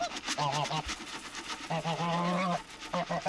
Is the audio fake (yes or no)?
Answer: no